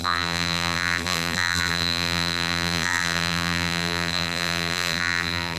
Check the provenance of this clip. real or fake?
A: fake